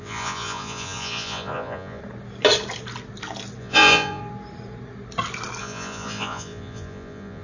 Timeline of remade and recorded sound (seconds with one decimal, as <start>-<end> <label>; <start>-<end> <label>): 0.0-2.0 remade; 2.0-3.6 recorded; 3.6-4.2 remade; 4.2-5.6 recorded; 5.6-7.4 remade